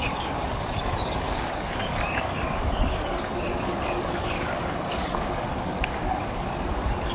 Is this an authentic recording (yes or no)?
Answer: no